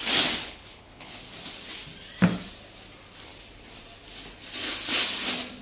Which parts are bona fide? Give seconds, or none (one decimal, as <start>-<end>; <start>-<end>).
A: 0.0-0.4; 1.2-5.6